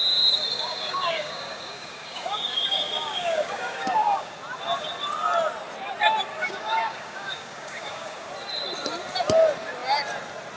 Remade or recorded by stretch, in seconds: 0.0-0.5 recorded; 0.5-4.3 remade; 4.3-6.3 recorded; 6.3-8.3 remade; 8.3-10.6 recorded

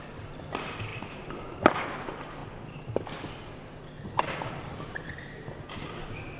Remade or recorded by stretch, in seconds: 0.0-6.4 recorded